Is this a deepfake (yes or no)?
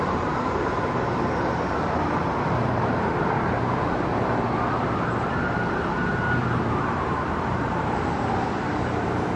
yes